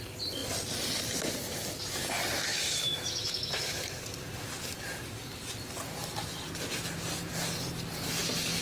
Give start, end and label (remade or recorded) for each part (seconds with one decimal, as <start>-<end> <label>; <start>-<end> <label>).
0.0-2.5 recorded; 2.5-4.0 remade; 4.0-8.6 recorded